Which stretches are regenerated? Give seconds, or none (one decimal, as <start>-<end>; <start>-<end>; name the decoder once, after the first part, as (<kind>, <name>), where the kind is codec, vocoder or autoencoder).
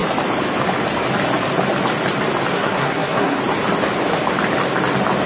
2.5-3.4 (codec, SNAC)